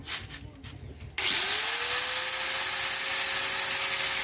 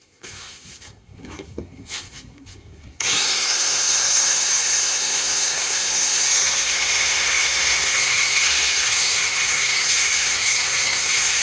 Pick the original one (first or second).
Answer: first